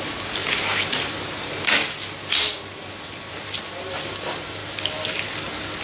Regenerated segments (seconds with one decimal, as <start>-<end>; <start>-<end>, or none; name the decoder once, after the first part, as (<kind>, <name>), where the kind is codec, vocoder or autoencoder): none